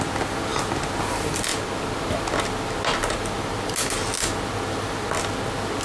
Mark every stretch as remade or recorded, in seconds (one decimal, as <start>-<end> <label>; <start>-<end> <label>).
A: 0.0-5.8 recorded